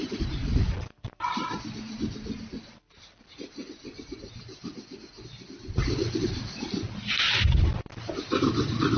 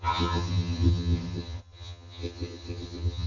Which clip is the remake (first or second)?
second